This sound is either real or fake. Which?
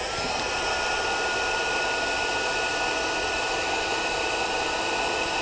real